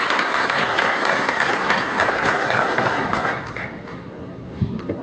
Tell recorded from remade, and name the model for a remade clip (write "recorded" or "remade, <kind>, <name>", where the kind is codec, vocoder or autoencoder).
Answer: remade, codec, SNAC